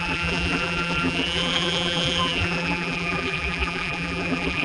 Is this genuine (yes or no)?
no